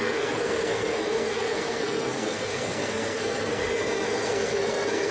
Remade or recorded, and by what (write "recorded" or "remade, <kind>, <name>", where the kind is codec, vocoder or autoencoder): remade, codec, SNAC